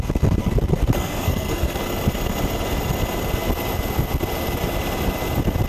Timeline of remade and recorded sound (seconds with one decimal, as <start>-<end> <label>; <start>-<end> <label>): 0.0-0.4 recorded; 0.4-1.8 remade; 1.8-5.7 recorded